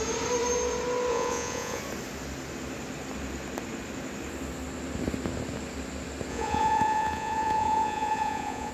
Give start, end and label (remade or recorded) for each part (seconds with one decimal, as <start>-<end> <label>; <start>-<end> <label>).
0.0-1.1 recorded; 1.1-1.8 remade; 1.8-6.3 recorded; 6.3-8.7 remade